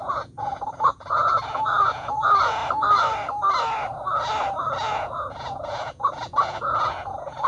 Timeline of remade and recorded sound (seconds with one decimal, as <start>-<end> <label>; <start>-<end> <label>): 0.0-2.6 remade; 2.6-4.8 recorded; 4.8-7.5 remade